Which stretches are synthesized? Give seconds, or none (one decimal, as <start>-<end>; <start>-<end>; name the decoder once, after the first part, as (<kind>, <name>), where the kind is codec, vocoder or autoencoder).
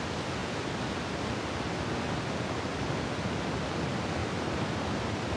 4.2-5.4 (vocoder, BigVGAN v2)